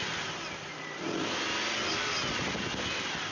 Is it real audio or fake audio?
real